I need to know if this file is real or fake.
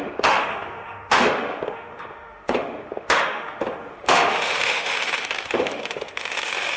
fake